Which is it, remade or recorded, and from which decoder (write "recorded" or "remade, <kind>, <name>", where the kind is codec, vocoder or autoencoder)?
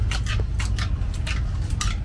recorded